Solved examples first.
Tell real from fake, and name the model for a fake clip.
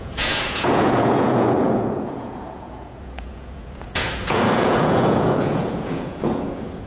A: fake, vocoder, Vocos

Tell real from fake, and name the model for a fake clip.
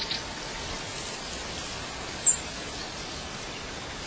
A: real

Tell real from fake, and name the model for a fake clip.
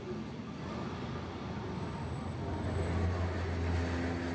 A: real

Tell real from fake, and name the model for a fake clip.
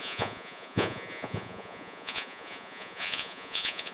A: fake, vocoder, Vocos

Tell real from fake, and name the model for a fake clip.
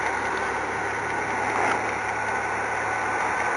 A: real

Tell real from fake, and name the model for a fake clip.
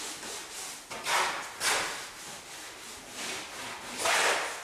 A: real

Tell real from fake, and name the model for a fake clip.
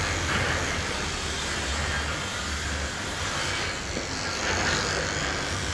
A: real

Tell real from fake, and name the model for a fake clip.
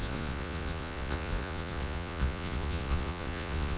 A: fake, vocoder, Vocos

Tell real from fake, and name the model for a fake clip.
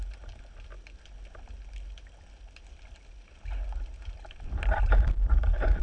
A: real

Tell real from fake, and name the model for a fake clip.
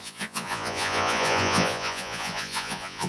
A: fake, vocoder, Vocos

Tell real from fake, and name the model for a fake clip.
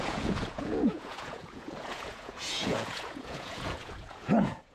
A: fake, vocoder, Vocos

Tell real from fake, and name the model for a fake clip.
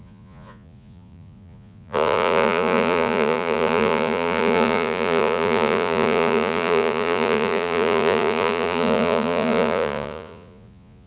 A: fake, vocoder, Vocos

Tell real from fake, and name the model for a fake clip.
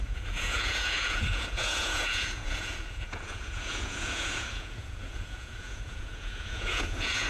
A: fake, vocoder, Vocos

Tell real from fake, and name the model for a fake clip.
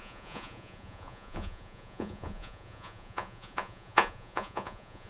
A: fake, vocoder, Vocos